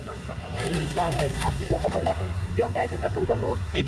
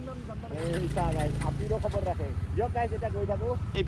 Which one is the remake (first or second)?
first